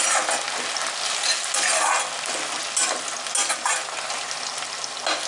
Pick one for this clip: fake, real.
real